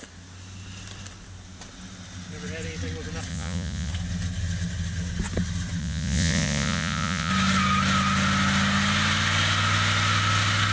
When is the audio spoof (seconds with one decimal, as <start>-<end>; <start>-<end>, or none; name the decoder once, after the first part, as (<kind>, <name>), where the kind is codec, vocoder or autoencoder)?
3.3-3.9 (vocoder, Vocos); 5.8-7.3